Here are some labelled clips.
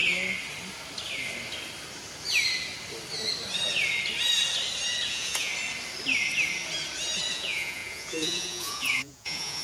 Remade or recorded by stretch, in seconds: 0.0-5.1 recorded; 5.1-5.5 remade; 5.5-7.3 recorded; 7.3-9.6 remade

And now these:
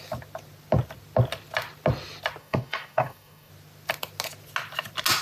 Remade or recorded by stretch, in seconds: 0.0-2.4 recorded; 2.4-3.5 remade; 3.5-5.2 recorded

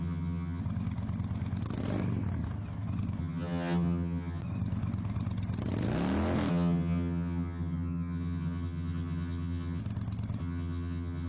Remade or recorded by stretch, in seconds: 0.0-0.6 remade; 0.6-3.2 recorded; 3.2-4.4 remade; 4.4-6.5 recorded; 6.5-9.8 remade; 9.8-10.4 recorded; 10.4-11.3 remade